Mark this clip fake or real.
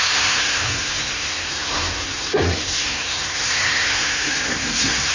fake